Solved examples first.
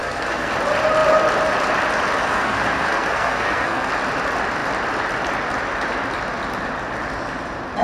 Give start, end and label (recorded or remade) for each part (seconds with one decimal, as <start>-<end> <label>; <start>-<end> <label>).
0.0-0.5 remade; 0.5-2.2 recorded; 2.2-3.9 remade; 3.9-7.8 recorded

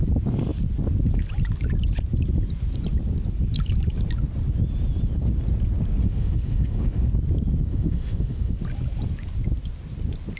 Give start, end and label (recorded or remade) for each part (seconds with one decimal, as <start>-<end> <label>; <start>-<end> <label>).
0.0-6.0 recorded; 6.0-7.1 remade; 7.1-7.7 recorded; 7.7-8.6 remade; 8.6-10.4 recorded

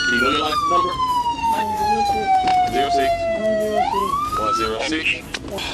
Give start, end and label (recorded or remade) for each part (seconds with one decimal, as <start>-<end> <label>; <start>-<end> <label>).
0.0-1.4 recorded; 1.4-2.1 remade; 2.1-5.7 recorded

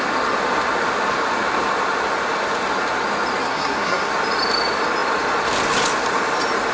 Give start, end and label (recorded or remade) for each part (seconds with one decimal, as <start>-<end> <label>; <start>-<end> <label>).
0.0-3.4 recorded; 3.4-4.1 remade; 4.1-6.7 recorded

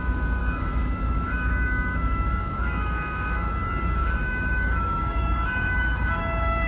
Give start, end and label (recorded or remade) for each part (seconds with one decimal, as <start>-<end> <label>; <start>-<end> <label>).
0.0-0.4 recorded; 0.4-3.5 remade; 3.5-4.0 recorded; 4.0-6.7 remade

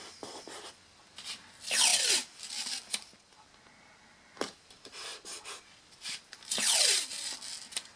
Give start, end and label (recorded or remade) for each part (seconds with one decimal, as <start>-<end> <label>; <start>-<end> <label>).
0.0-8.0 recorded

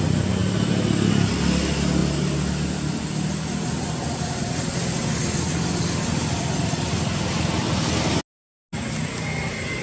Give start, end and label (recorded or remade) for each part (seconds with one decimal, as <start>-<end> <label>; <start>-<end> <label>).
0.0-9.8 recorded